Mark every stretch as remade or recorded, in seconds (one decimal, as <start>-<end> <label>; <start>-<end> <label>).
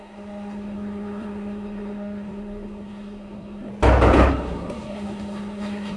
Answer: 0.0-3.7 remade; 3.7-4.3 recorded; 4.3-6.0 remade